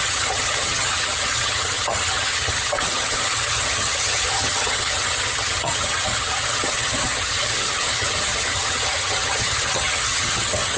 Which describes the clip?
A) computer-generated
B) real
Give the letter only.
A